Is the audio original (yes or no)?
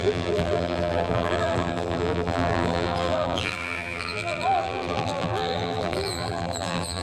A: no